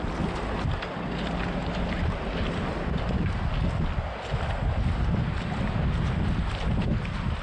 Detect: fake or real real